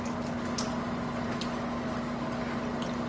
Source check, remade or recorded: recorded